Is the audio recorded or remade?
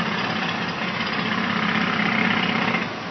recorded